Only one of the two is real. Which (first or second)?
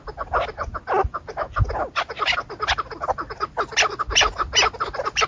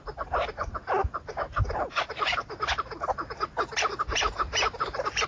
first